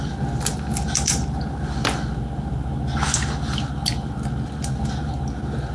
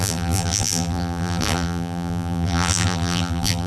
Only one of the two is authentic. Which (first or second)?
first